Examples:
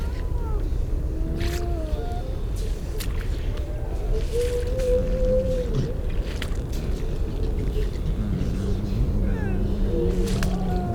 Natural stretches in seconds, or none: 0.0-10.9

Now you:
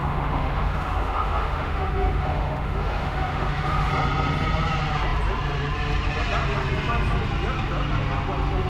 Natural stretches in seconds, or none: 3.9-8.7

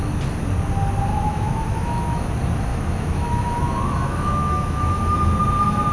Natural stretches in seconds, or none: 0.0-1.1; 2.3-2.7; 5.0-5.9

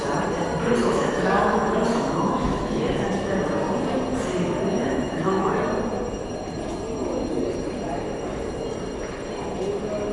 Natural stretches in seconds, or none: 0.0-0.8; 3.1-4.8; 5.7-10.1

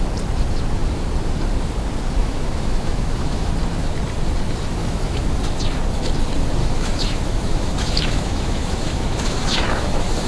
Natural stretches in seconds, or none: 0.0-2.2; 3.5-4.8; 5.4-6.6

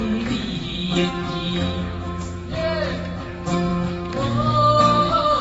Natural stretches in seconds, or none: 2.6-3.2

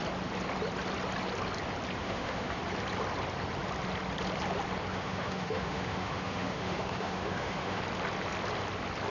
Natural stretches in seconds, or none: 0.0-2.0; 2.6-4.9; 7.8-9.1

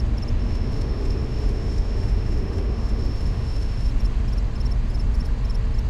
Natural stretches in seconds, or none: 0.0-0.4; 3.9-5.9